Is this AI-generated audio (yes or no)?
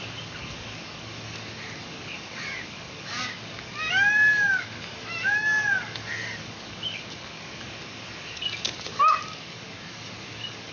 yes